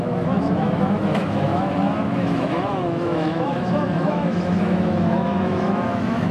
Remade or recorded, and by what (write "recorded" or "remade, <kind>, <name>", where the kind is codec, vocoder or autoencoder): remade, autoencoder, DAC-VAE